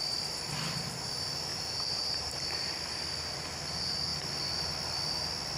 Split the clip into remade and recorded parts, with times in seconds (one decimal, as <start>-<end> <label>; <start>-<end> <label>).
0.0-1.5 recorded; 1.5-2.3 remade; 2.3-5.6 recorded